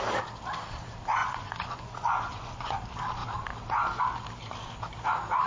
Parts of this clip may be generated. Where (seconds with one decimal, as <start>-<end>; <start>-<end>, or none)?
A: 1.2-2.8